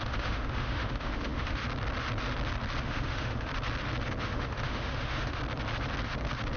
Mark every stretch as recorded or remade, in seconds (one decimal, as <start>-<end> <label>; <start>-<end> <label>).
0.0-1.6 remade; 1.6-2.8 recorded; 2.8-3.5 remade; 3.5-4.2 recorded; 4.2-5.4 remade; 5.4-6.6 recorded